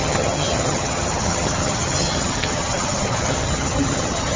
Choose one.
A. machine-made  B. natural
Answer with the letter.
A